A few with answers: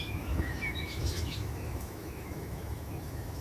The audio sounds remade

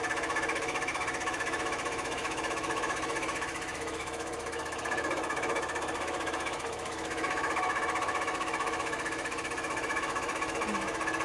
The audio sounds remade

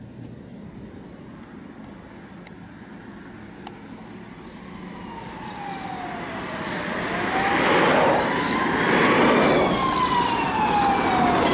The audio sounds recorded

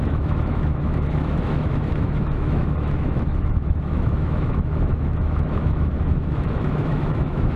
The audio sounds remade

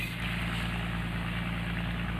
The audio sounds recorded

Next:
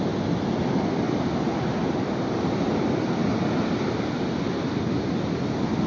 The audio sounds recorded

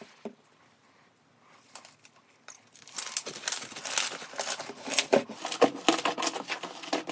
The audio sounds recorded